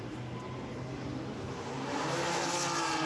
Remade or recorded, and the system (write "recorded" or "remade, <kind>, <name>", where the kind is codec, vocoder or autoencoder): recorded